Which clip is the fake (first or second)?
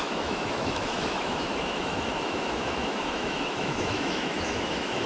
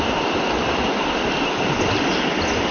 first